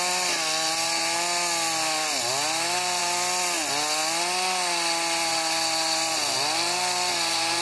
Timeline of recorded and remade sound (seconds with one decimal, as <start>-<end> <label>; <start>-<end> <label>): 0.0-7.6 recorded